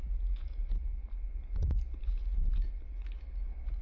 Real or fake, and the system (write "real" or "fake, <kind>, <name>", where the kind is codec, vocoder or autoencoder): real